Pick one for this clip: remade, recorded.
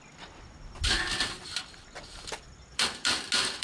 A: recorded